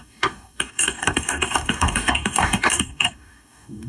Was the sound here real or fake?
fake